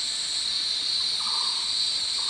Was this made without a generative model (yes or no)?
yes